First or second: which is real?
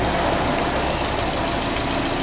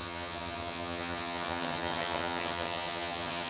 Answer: first